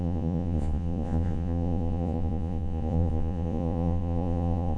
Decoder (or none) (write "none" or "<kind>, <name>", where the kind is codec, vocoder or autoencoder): vocoder, Vocos